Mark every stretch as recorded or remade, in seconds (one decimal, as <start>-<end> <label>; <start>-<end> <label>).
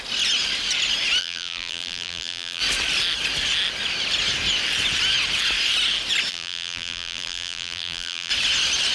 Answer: 0.0-1.2 recorded; 1.2-2.6 remade; 2.6-6.3 recorded; 6.3-8.3 remade; 8.3-8.9 recorded